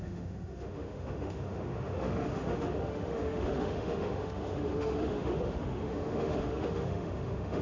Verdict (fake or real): fake